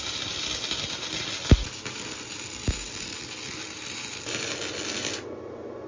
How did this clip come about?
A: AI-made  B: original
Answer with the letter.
B